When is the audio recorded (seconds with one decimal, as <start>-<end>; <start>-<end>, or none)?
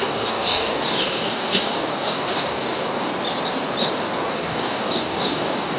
3.1-4.3